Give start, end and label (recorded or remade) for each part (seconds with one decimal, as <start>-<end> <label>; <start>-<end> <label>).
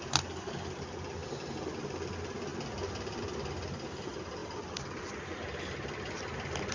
0.0-6.7 recorded